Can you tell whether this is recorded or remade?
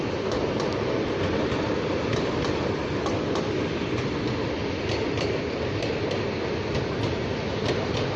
recorded